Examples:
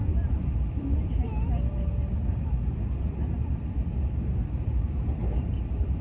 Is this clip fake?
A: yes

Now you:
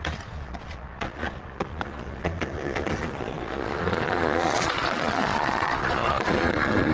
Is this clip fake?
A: yes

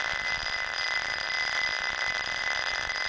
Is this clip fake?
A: no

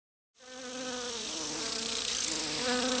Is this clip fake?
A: no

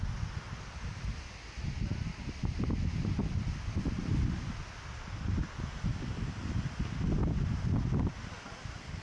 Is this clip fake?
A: no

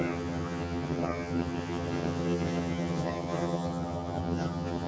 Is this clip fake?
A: yes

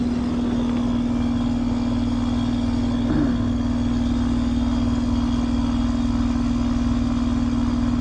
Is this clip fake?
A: no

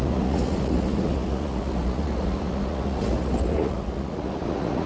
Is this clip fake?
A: yes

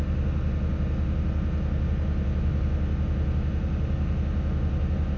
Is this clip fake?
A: no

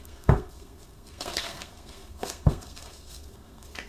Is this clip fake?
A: yes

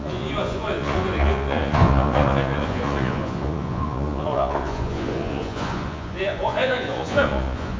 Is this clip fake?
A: yes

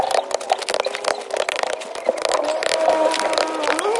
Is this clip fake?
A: no